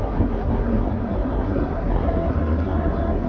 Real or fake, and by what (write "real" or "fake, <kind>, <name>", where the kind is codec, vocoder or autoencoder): fake, codec, SNAC